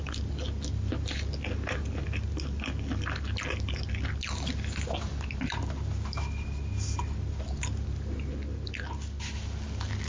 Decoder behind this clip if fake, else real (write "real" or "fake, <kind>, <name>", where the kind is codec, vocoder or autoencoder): real